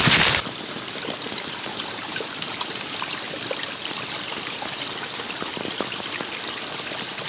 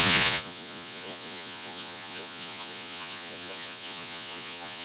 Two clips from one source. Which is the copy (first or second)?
second